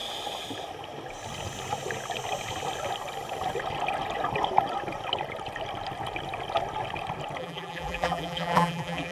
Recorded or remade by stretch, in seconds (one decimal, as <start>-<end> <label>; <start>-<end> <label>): 0.0-7.4 recorded; 7.4-9.1 remade